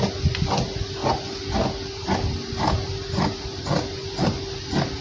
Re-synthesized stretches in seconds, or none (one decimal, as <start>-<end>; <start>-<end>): none